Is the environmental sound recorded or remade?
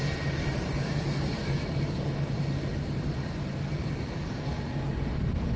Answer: recorded